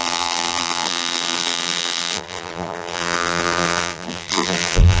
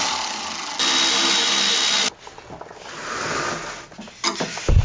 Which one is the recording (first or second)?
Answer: second